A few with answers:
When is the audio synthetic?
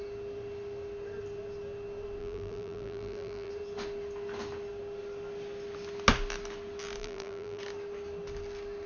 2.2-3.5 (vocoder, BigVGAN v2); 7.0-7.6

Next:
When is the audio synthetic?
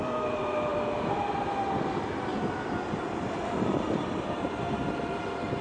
0.0-5.6 (vocoder, BigVGAN v2)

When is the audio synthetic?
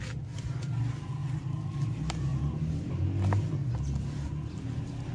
none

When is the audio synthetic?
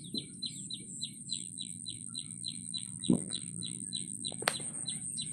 1.3-4.4 (vocoder, BigVGAN v2)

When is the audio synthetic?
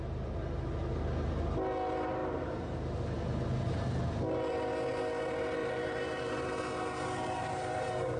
2.2-3.0 (vocoder, BigVGAN v2); 5.6-8.2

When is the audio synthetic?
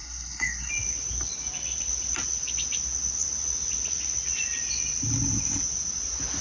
0.0-0.7 (codec, SNAC)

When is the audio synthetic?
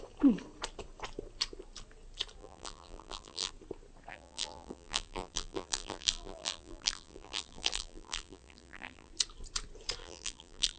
2.4-3.5 (vocoder, BigVGAN v2); 4.1-9.1; 10.0-10.8